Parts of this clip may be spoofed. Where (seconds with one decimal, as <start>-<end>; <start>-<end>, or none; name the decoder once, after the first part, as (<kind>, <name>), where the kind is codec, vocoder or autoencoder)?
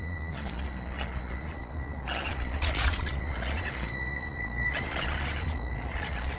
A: 0.0-6.4 (vocoder, Vocos)